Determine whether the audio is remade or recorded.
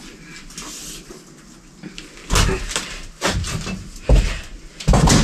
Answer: recorded